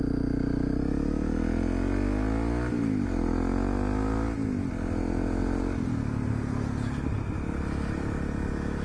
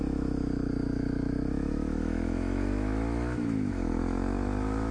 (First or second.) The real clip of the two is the first